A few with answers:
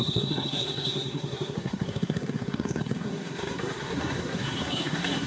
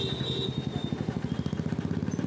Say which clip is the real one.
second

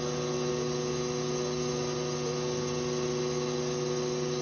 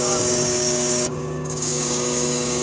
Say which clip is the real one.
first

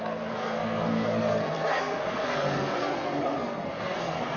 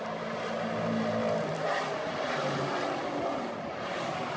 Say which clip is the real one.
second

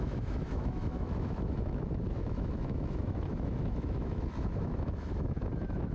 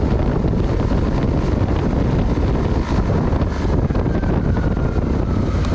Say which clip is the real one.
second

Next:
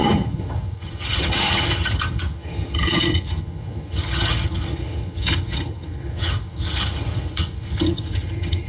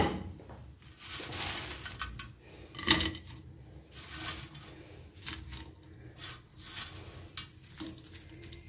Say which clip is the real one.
second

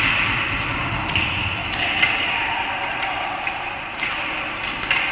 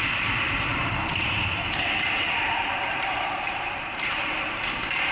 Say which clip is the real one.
first